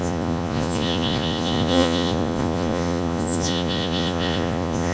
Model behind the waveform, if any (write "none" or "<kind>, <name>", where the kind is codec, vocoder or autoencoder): vocoder, Vocos